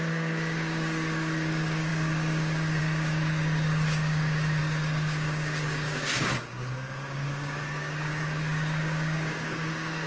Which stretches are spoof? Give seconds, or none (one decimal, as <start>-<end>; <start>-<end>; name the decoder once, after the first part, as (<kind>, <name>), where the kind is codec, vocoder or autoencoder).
0.0-10.1 (codec, DAC)